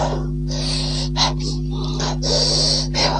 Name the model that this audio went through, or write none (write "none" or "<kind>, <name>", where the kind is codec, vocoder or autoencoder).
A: none